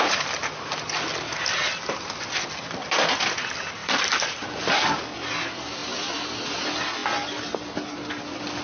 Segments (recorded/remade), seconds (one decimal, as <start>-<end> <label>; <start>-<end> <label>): 0.0-3.8 recorded; 3.8-4.5 remade; 4.5-8.6 recorded